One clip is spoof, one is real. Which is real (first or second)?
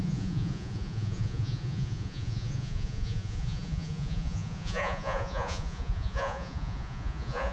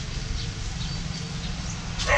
second